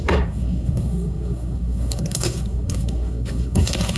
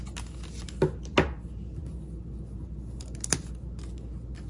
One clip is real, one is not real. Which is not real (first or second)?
first